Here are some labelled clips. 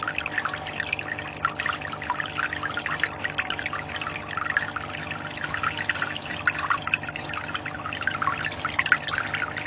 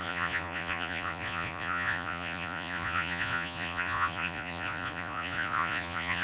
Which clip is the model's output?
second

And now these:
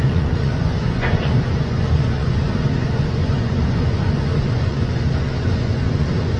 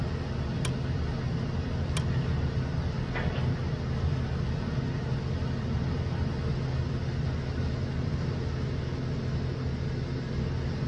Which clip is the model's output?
first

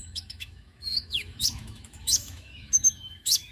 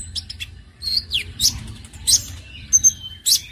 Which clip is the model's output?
first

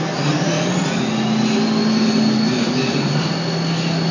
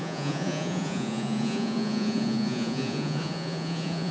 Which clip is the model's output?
second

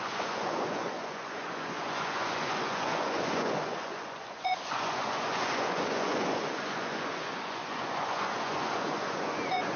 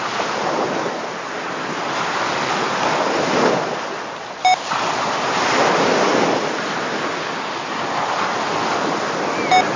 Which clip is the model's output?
first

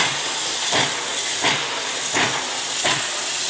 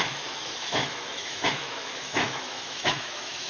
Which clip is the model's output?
second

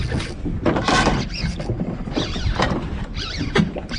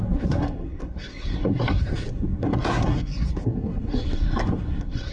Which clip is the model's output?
second